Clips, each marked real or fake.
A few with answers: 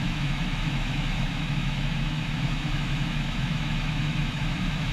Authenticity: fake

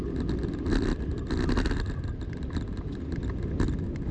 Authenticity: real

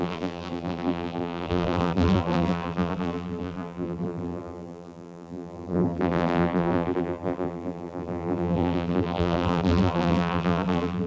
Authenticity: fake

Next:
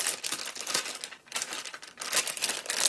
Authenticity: real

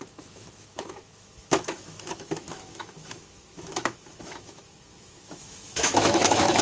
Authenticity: fake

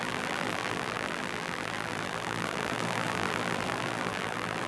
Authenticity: fake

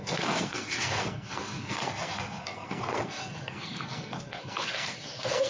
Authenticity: fake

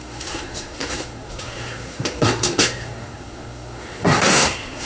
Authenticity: fake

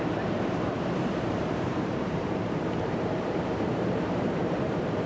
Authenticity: fake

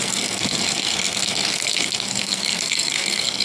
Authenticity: fake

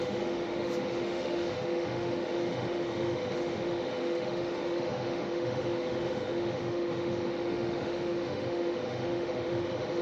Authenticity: fake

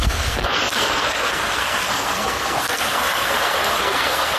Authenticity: fake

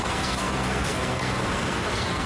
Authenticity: fake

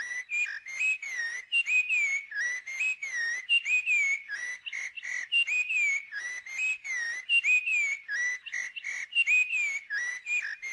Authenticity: real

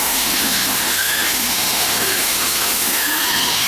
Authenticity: fake